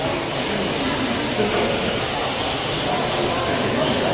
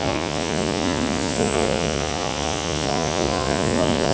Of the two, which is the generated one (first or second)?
second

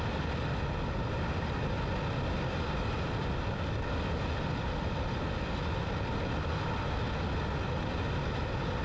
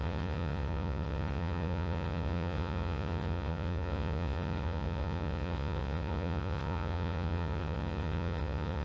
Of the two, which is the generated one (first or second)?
second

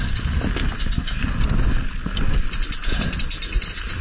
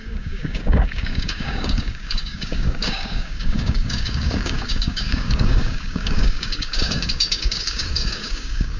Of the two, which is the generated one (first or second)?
second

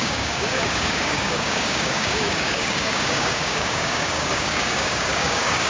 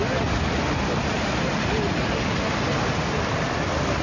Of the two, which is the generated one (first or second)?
first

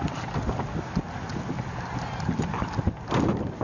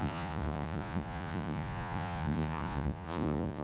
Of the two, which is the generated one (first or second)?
second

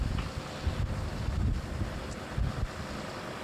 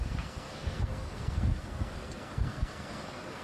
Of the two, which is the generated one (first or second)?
second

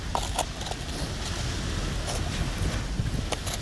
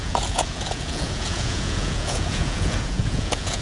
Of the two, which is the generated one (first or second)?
second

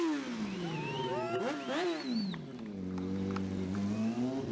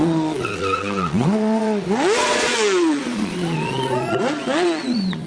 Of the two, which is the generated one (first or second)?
second